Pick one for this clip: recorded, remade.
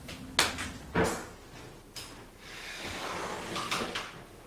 recorded